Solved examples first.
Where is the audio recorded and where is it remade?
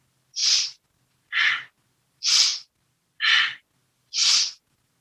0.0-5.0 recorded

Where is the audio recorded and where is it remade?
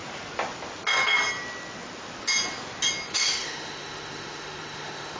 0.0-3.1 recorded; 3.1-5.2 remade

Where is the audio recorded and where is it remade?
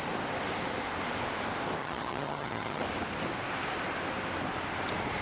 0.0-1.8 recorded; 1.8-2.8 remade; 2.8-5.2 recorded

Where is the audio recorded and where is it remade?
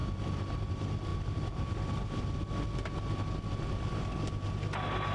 0.0-5.1 recorded